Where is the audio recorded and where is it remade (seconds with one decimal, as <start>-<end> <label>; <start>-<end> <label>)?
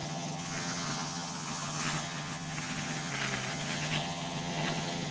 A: 0.0-3.1 remade; 3.1-3.5 recorded; 3.5-5.1 remade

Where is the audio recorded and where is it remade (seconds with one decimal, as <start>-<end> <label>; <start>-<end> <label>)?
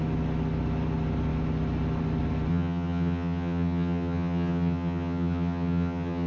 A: 0.0-2.5 recorded; 2.5-6.3 remade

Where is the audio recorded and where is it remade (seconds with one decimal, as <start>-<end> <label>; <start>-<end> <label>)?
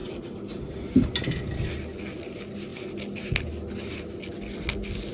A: 0.0-5.1 recorded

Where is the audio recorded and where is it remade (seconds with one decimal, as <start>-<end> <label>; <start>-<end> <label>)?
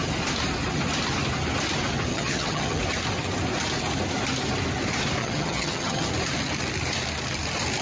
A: 0.0-2.1 recorded; 2.1-2.8 remade; 2.8-5.2 recorded; 5.2-6.1 remade; 6.1-7.8 recorded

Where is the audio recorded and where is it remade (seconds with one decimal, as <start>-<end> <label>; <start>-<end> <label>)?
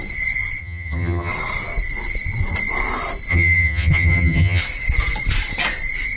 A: 0.0-0.6 recorded; 0.6-1.3 remade; 1.3-3.3 recorded; 3.3-4.6 remade; 4.6-6.2 recorded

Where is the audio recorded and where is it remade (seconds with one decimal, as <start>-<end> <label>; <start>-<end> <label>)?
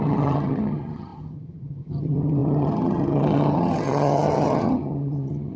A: 0.0-5.6 remade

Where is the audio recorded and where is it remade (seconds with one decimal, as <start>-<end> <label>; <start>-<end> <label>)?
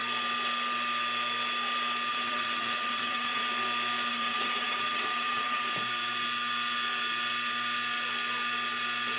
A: 0.0-2.1 recorded; 2.1-3.4 remade; 3.4-4.1 recorded; 4.1-5.6 remade; 5.6-9.2 recorded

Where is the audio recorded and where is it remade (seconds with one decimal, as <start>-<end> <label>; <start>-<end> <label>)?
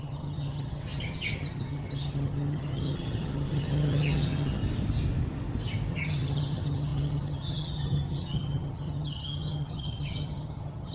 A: 0.0-4.6 remade; 4.6-5.9 recorded; 5.9-10.9 remade